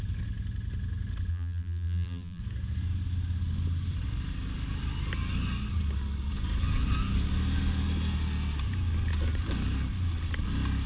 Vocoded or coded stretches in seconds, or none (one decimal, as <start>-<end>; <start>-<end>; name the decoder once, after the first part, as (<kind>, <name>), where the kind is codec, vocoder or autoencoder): 1.3-2.4 (vocoder, BigVGAN v2)